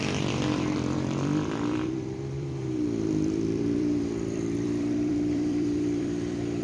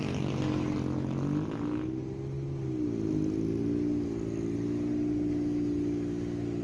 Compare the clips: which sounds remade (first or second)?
first